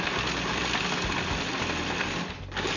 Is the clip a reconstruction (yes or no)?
no